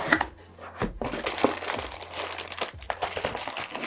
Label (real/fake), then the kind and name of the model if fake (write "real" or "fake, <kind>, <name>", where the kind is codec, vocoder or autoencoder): real